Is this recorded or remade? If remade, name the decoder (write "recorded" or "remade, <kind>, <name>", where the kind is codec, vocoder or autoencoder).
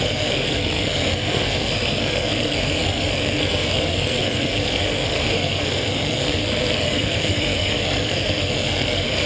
remade, codec, SNAC